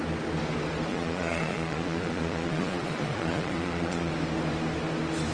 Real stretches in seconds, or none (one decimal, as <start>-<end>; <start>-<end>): 0.0-0.9; 4.1-5.3